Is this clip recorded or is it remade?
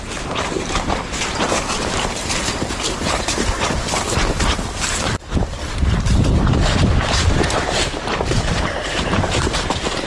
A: remade